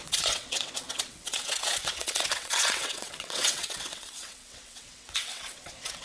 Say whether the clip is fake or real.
fake